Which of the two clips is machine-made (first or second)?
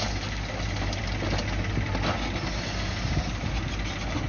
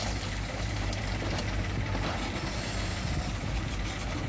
second